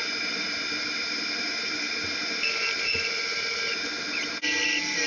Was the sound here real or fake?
real